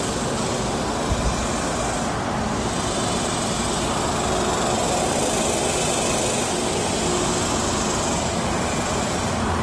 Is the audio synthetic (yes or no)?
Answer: no